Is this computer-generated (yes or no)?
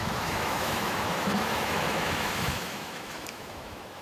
yes